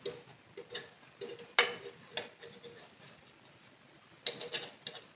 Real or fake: real